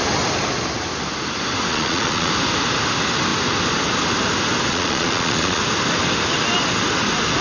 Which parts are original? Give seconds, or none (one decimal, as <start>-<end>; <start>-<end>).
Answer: 0.0-1.7; 2.3-4.7; 5.6-7.4